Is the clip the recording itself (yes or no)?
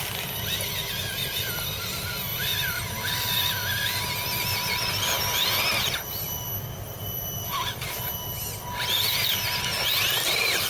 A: yes